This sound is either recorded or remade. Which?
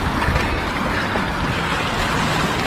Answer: recorded